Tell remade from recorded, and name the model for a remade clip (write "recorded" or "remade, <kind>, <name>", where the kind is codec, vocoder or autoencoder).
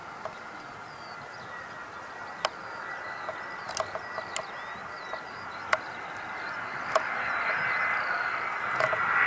recorded